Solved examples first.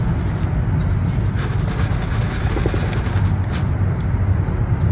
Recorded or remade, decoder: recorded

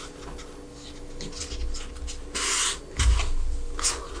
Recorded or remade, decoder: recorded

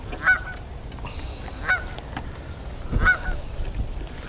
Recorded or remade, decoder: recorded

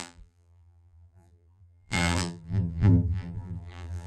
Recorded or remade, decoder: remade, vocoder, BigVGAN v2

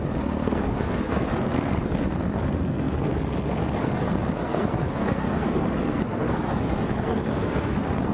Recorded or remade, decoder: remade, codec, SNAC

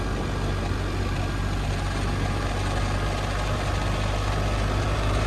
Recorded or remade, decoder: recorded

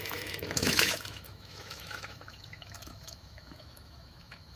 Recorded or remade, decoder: remade, autoencoder, DAC-VAE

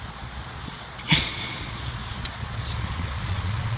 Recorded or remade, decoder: remade, vocoder, Vocos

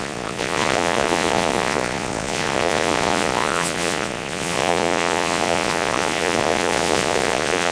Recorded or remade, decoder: remade, vocoder, Vocos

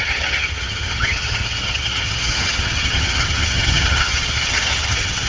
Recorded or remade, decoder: remade, vocoder, HiFi-GAN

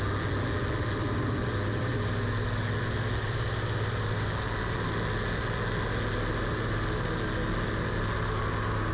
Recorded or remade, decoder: recorded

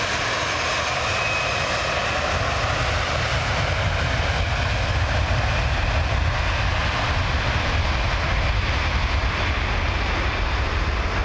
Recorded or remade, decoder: recorded